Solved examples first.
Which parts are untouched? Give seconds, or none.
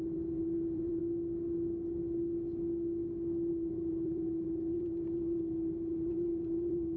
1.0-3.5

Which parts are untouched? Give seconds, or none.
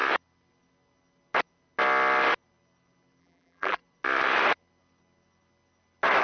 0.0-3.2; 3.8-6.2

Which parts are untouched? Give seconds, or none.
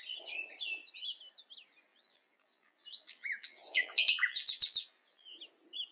0.0-1.9; 5.3-5.9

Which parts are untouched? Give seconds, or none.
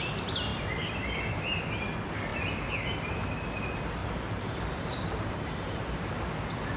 0.0-0.5; 1.6-4.0; 6.2-6.8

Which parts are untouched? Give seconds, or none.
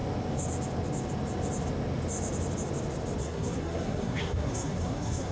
0.0-3.2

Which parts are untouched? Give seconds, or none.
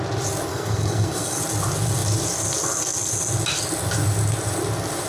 0.0-0.5; 1.4-5.1